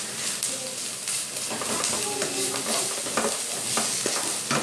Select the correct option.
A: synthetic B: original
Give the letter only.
B